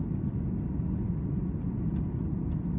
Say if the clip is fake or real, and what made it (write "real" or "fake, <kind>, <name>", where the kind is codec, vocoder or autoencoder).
real